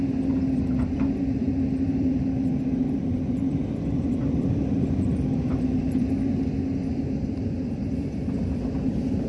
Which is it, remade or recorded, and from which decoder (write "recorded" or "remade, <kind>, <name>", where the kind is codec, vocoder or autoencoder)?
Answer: remade, vocoder, BigVGAN v2